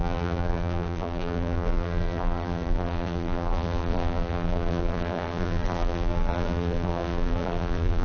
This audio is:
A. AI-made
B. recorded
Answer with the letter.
A